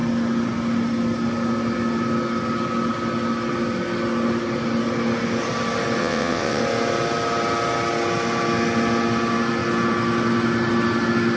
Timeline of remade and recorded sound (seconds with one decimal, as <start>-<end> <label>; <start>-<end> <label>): 0.0-6.0 recorded; 6.0-6.6 remade; 6.6-11.4 recorded